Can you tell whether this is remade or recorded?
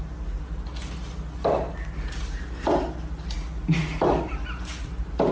recorded